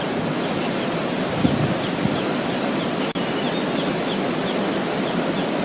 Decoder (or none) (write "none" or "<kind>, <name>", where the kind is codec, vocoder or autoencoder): none